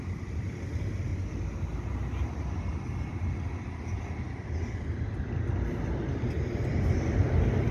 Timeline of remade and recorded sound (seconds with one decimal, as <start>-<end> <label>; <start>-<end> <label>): 0.0-1.1 remade; 1.1-5.7 recorded; 5.7-7.7 remade